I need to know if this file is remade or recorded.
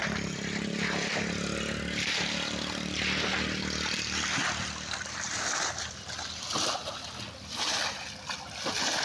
recorded